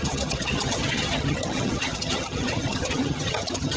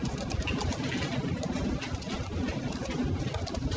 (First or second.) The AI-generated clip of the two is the first